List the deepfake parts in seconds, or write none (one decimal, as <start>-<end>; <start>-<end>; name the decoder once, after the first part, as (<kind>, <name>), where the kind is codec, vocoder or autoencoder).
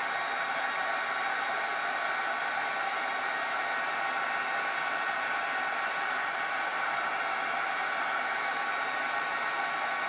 0.0-10.1 (vocoder, BigVGAN v2)